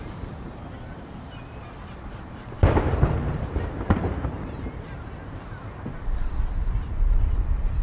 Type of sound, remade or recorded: remade